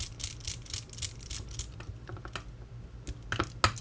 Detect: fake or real real